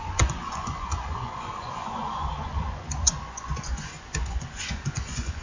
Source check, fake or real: fake